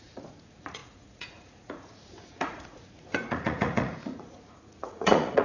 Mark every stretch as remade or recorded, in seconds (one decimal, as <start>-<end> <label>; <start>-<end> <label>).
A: 0.0-5.4 remade

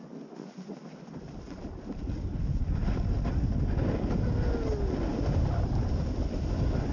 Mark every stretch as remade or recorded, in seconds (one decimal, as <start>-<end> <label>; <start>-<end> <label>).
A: 0.0-6.9 recorded

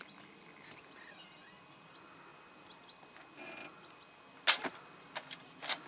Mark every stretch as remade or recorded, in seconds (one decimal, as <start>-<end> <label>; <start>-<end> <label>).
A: 0.0-5.9 recorded

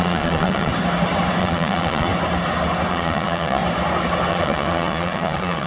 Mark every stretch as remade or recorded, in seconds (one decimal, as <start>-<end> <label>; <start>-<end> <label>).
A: 0.0-0.7 remade; 0.7-1.4 recorded; 1.4-2.1 remade; 2.1-2.9 recorded; 2.9-3.6 remade; 3.6-4.3 recorded; 4.3-5.7 remade

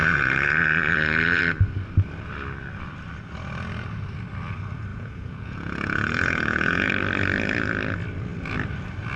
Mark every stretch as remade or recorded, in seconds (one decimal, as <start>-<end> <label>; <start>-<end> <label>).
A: 0.0-1.4 remade; 1.4-4.9 recorded; 4.9-6.9 remade; 6.9-9.2 recorded

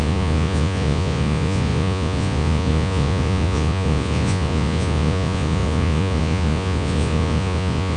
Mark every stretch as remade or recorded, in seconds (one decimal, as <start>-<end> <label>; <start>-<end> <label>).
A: 0.0-8.0 remade